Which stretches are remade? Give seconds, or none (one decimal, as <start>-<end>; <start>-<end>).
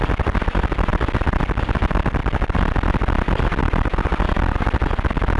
none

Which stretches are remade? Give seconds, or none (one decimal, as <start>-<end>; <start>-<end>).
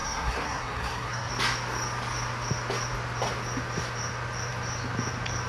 0.0-1.3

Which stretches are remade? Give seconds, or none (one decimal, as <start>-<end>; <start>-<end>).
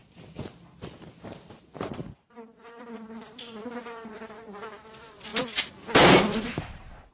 1.3-5.3; 6.2-7.1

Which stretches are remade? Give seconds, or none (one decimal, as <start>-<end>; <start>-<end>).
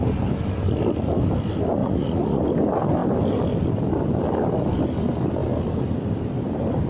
1.8-2.4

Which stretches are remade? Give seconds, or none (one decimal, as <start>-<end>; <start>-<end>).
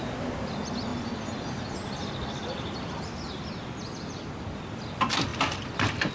none